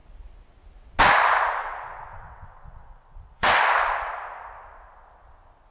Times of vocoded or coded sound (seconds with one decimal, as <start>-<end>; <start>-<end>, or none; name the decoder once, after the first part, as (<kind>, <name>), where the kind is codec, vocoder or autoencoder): 1.6-3.6 (vocoder, WaveNeXt)